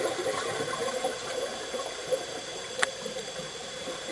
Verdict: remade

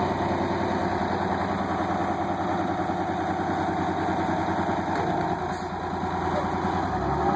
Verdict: recorded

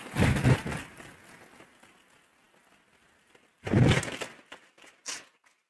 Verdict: recorded